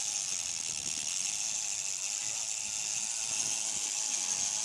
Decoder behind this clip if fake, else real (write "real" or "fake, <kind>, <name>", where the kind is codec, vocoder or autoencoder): real